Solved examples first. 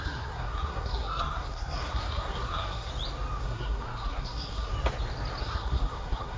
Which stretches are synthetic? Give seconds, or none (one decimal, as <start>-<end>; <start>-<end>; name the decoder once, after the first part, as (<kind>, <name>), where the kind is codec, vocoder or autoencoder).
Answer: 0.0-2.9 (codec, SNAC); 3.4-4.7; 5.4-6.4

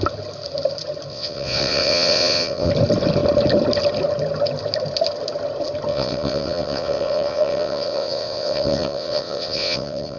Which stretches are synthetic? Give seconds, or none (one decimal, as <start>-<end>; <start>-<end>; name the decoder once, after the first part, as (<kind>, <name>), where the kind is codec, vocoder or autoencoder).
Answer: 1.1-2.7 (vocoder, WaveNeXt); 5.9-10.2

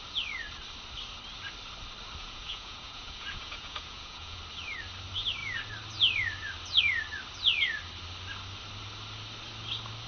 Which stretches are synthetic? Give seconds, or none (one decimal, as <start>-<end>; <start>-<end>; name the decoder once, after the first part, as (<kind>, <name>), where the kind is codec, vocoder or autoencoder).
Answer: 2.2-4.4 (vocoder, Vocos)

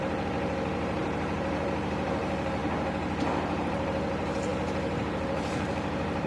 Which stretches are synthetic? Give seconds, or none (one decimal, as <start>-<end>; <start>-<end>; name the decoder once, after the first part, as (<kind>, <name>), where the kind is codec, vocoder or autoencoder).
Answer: 0.0-2.6 (vocoder, BigVGAN v2); 3.6-6.3

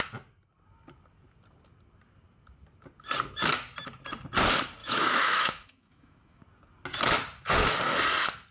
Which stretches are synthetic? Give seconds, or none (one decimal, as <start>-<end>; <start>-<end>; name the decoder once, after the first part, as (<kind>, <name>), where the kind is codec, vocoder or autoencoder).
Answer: 4.8-6.4 (autoencoder, DAC-VAE)

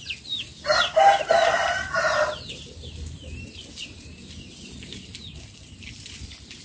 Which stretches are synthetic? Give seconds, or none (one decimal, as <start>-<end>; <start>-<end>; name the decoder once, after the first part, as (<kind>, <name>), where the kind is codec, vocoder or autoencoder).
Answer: none

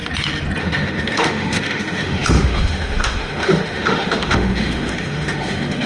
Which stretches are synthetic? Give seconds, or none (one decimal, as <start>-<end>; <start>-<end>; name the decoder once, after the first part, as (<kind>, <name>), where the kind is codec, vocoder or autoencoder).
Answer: 0.6-5.9 (autoencoder, DAC-VAE)

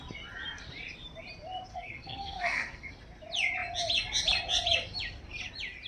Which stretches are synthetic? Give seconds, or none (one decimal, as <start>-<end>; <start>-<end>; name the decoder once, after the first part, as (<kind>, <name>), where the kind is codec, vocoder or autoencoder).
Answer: 1.7-2.9 (codec, SNAC)